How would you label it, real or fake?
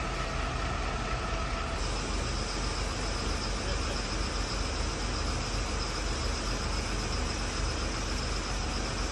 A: real